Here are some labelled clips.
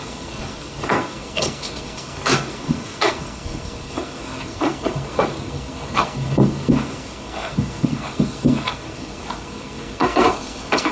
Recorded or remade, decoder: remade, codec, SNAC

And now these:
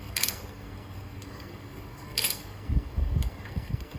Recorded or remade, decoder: remade, codec, SNAC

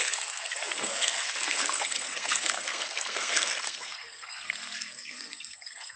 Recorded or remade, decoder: remade, codec, SNAC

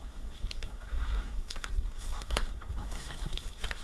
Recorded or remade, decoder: remade, codec, SNAC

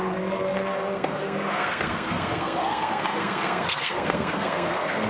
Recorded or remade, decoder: remade, codec, SNAC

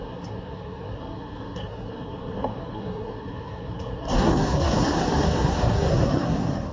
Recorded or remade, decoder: remade, codec, SNAC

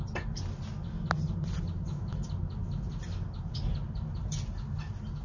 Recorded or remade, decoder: recorded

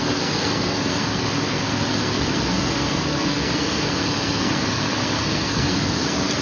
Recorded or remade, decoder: remade, codec, SNAC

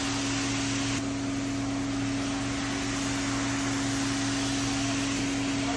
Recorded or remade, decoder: recorded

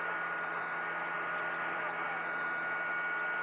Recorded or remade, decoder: recorded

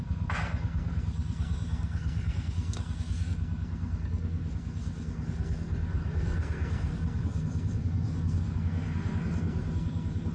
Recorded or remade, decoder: remade, codec, SNAC